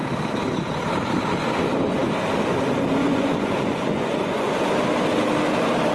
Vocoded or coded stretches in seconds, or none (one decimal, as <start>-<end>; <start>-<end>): 3.0-4.6